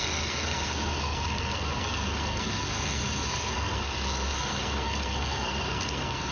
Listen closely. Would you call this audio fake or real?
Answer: fake